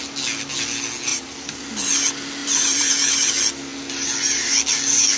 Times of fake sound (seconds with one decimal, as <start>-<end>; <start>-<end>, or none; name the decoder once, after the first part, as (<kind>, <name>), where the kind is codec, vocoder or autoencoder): 1.1-1.6 (vocoder, BigVGAN v2); 2.4-3.3